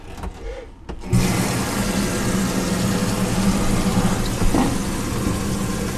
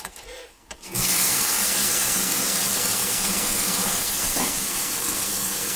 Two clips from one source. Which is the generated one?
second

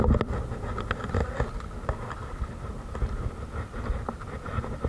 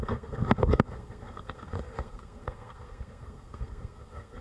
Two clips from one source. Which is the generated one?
second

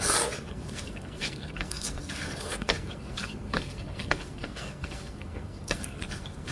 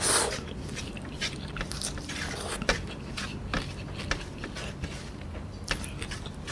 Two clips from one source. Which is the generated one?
first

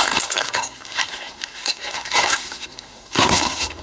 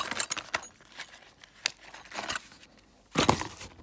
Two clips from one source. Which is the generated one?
first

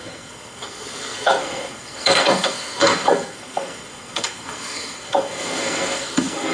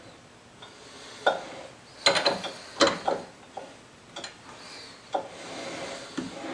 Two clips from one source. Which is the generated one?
first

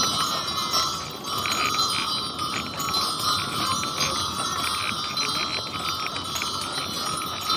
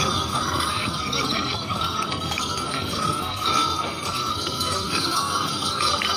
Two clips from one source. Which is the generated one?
second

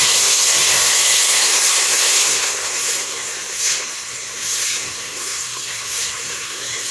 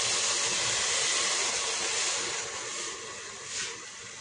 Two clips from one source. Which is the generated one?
first